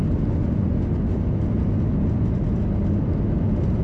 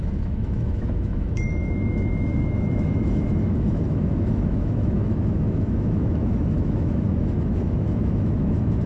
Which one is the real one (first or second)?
first